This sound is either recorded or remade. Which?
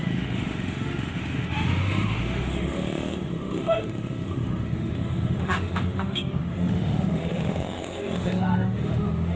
remade